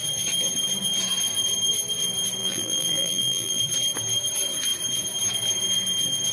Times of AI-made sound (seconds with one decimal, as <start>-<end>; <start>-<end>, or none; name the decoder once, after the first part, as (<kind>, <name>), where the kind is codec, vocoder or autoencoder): 2.4-3.6 (vocoder, BigVGAN v2)